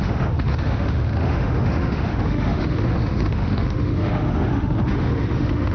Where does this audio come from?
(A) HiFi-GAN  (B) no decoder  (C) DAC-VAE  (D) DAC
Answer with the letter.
C